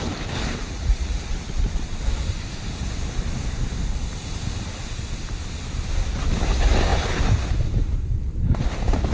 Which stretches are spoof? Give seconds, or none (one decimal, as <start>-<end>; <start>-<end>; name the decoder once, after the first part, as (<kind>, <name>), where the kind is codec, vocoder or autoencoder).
0.6-1.2 (vocoder, Vocos)

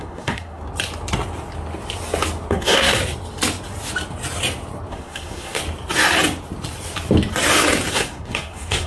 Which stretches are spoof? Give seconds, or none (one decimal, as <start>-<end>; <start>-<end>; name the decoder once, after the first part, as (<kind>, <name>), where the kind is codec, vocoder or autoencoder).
0.0-0.6 (codec, SNAC); 2.5-3.0; 4.9-5.6; 7.9-8.9

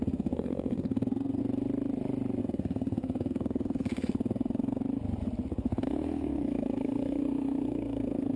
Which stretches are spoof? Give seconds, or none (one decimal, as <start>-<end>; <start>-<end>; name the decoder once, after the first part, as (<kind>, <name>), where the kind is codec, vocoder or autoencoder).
0.0-1.4 (codec, SNAC); 2.4-4.8; 5.5-8.4

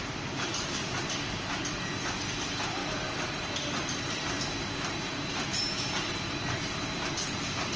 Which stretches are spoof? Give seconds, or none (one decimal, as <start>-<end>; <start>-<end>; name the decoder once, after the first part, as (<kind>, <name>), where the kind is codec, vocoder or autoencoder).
none

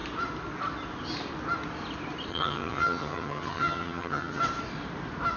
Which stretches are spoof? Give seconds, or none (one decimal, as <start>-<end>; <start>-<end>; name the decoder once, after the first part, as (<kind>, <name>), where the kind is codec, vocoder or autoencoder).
2.3-4.4 (vocoder, HiFi-GAN)

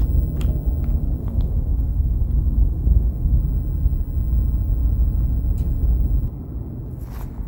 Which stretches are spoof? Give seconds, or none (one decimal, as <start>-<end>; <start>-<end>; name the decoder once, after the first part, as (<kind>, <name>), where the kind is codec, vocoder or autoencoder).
1.2-3.4 (codec, SNAC)

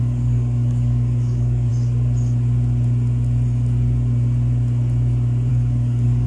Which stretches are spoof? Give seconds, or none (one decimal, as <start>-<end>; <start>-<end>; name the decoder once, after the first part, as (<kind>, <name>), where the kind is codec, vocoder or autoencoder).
0.0-1.7 (codec, DAC); 5.5-6.3

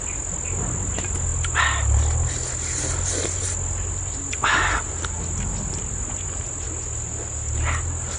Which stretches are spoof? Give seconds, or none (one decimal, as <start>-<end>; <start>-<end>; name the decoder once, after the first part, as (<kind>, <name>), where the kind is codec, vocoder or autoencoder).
none